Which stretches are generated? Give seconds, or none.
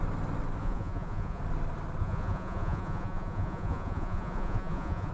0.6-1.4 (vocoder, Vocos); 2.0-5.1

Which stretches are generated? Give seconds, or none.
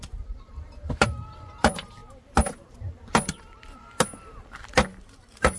0.0-2.0 (vocoder, BigVGAN v2); 5.1-5.6